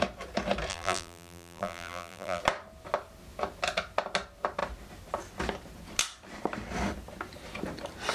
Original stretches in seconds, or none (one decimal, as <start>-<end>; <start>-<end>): 0.0-0.7; 2.4-8.1